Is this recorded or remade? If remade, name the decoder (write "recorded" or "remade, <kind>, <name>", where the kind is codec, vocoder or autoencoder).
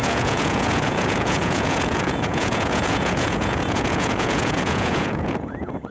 remade, vocoder, Vocos